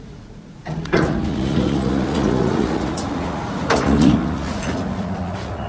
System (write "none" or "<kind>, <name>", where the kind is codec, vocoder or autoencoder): vocoder, Vocos